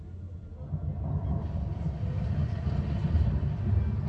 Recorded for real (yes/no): yes